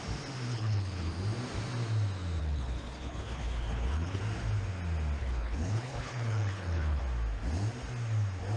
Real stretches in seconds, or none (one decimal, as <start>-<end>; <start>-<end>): 0.0-0.5; 1.1-2.4; 4.2-5.2; 7.0-8.6